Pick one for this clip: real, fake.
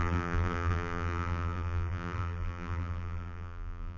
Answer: fake